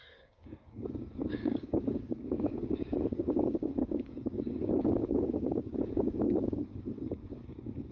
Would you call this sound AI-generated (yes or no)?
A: yes